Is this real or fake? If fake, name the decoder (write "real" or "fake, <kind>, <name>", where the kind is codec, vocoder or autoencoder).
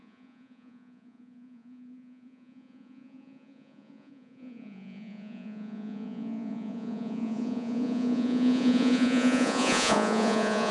fake, vocoder, Vocos